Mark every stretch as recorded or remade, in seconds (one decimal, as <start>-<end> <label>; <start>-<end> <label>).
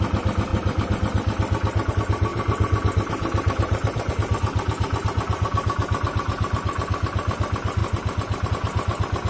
0.0-0.5 recorded; 0.5-1.9 remade; 1.9-2.3 recorded; 2.3-4.1 remade; 4.1-9.3 recorded